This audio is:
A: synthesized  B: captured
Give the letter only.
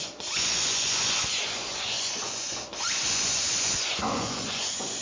A